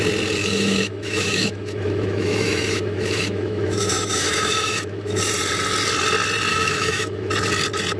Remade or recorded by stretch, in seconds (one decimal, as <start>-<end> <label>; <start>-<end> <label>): 0.0-0.4 recorded; 0.4-5.2 remade; 5.2-6.5 recorded; 6.5-7.3 remade; 7.3-8.0 recorded